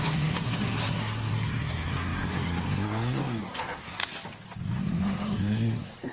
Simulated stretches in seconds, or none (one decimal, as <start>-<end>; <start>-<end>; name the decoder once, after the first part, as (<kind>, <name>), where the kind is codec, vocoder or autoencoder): 0.0-4.0 (codec, SNAC); 4.8-6.1